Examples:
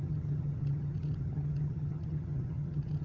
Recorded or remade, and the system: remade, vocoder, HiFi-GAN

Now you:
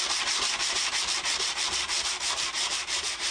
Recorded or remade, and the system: remade, vocoder, BigVGAN v2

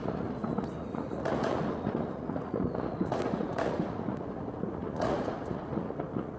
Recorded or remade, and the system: remade, vocoder, Vocos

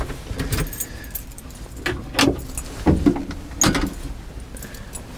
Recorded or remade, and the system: recorded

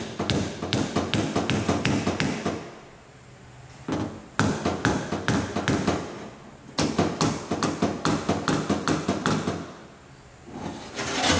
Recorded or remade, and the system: recorded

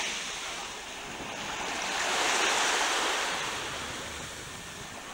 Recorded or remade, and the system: recorded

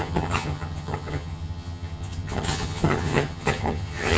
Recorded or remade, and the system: remade, vocoder, HiFi-GAN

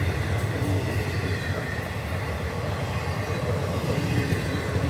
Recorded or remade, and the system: recorded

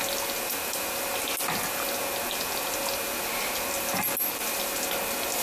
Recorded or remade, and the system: recorded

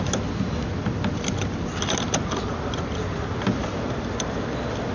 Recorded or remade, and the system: remade, vocoder, BigVGAN v2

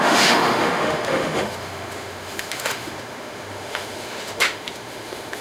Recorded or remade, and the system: remade, autoencoder, DAC-VAE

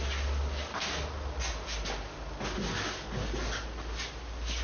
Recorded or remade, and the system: recorded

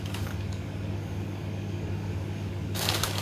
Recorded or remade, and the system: remade, codec, DAC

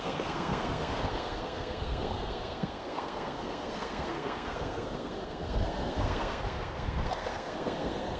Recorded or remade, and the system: remade, codec, SNAC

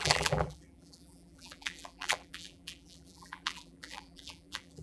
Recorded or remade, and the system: remade, vocoder, BigVGAN v2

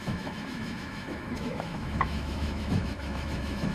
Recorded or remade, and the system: remade, autoencoder, DAC-VAE